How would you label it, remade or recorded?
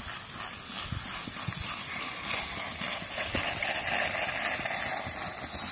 recorded